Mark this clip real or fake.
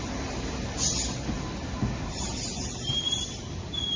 real